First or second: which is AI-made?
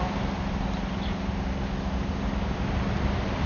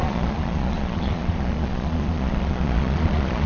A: second